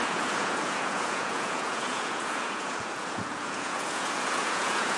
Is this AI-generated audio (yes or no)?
yes